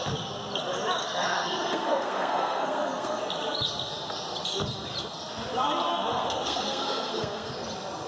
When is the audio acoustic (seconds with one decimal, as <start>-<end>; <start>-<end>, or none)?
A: 0.0-1.0; 3.2-5.9; 7.5-8.1